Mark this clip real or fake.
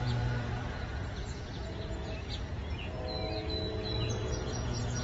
fake